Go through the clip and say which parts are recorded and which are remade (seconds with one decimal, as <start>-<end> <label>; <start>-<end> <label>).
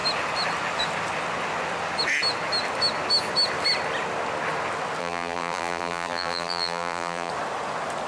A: 0.0-5.0 recorded; 5.0-7.3 remade; 7.3-8.1 recorded